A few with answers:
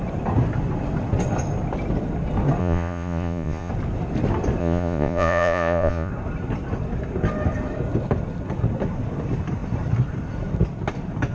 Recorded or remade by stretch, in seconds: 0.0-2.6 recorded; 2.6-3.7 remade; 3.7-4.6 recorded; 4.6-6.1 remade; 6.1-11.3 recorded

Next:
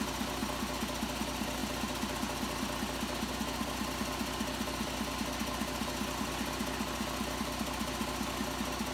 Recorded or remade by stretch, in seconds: 0.0-8.9 recorded

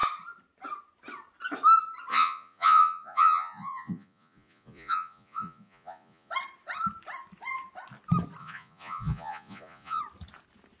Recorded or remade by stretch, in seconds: 0.0-2.1 recorded; 2.1-6.3 remade; 6.3-8.4 recorded; 8.4-10.0 remade; 10.0-10.8 recorded

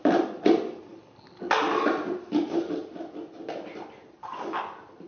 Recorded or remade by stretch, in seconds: 0.0-5.1 recorded

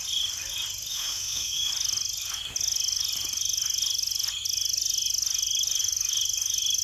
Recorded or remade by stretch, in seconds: 0.0-0.9 recorded; 0.9-1.7 remade; 1.7-6.8 recorded

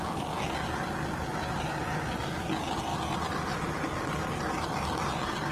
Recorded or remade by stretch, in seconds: 0.0-1.3 recorded; 1.3-2.2 remade; 2.2-2.9 recorded; 2.9-5.5 remade

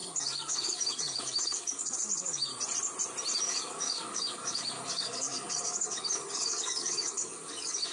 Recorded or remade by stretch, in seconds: 0.0-2.5 remade; 2.5-3.4 recorded; 3.4-7.9 remade

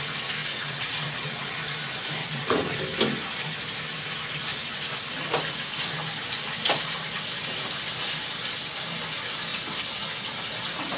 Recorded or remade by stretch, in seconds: 0.0-0.4 recorded; 0.4-1.4 remade; 1.4-2.2 recorded; 2.2-2.8 remade; 2.8-11.0 recorded